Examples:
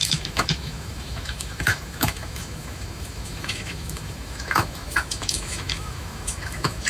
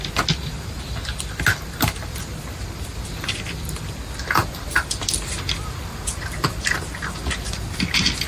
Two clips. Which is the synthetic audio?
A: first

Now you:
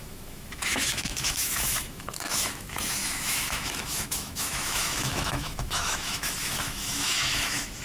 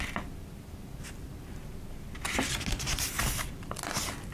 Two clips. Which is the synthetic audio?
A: first